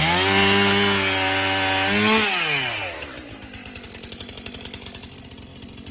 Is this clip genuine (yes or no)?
yes